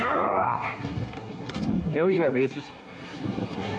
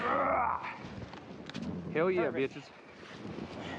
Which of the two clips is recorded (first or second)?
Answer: second